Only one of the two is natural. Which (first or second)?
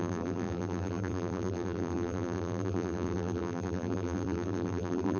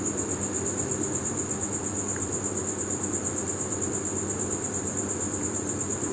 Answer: second